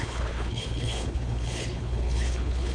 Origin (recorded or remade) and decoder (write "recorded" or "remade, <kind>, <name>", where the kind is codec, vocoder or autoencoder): remade, codec, HILCodec